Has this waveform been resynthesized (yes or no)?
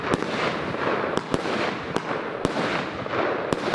no